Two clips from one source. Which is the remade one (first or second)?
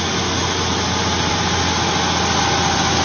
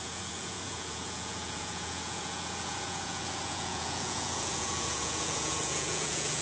second